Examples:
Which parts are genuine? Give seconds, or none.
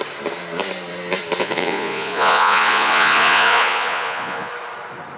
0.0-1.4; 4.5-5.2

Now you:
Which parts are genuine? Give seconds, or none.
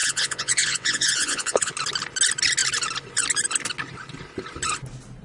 1.7-5.2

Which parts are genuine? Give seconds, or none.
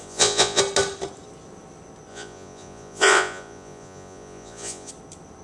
0.6-2.1; 4.9-5.4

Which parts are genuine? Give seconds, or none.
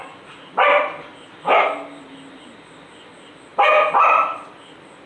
0.0-5.1